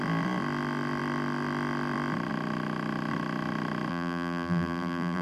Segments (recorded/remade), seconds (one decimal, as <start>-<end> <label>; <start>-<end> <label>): 0.0-3.9 recorded; 3.9-5.2 remade